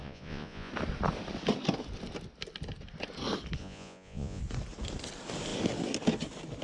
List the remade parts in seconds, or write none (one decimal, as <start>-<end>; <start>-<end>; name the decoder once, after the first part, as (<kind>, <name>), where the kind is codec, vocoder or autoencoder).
0.0-0.7 (vocoder, Vocos); 3.6-4.4